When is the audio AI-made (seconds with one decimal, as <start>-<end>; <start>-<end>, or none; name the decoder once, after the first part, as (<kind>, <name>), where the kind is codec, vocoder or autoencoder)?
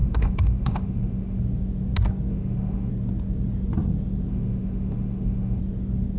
0.0-1.4 (autoencoder, DAC-VAE); 2.3-2.9; 4.3-5.6